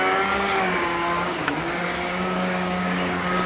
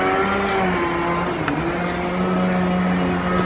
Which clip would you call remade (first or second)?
first